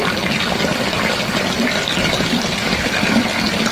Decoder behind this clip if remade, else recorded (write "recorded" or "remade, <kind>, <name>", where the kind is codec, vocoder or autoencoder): recorded